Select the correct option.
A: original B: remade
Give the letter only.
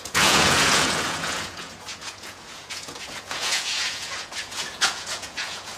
B